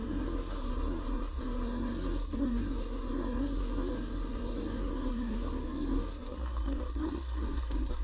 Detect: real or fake fake